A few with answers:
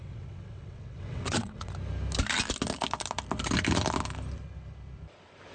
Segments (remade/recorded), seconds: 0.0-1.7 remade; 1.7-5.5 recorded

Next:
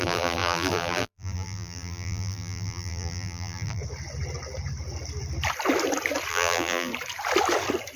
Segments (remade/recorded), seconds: 0.0-3.8 remade; 3.8-6.3 recorded; 6.3-6.9 remade; 6.9-8.0 recorded